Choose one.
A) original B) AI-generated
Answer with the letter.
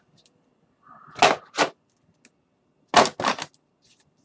A